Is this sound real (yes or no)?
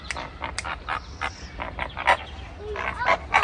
yes